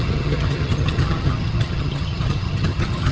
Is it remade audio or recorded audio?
remade